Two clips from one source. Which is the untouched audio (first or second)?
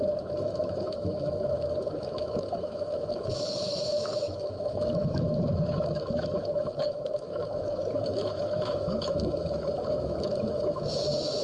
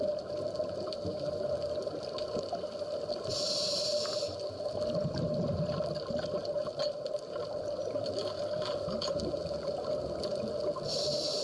second